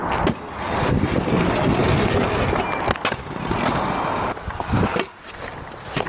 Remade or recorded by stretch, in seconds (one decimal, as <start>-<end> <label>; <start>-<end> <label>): 0.0-6.1 recorded